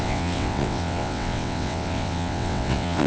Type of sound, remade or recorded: remade